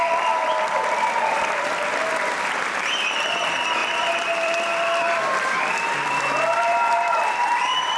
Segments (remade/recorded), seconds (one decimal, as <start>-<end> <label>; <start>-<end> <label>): 0.0-2.0 remade; 2.0-2.5 recorded; 2.5-8.0 remade